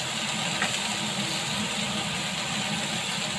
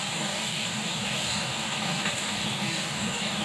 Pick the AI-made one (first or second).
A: second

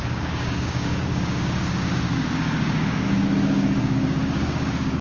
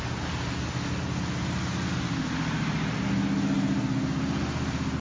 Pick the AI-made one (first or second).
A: first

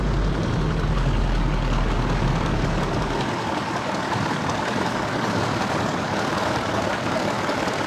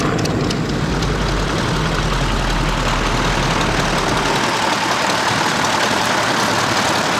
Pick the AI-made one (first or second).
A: first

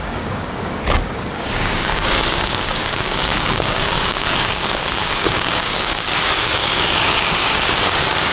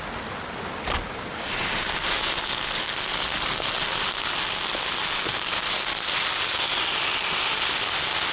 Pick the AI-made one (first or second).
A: first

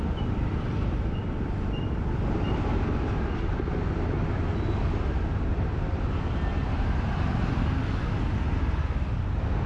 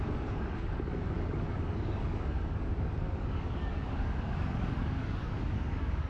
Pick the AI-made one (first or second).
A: second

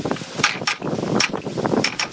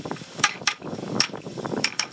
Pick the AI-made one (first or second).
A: second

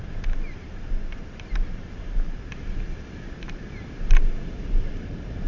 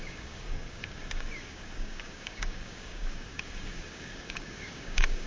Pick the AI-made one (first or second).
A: second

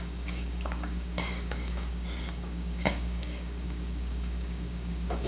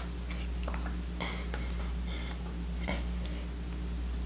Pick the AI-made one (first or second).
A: first